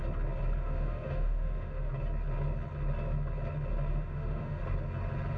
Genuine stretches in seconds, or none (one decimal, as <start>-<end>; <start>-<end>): 0.0-0.6; 1.9-3.9; 4.6-5.4